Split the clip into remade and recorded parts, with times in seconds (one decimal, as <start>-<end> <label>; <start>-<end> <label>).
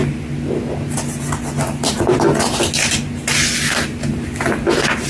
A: 0.0-5.1 recorded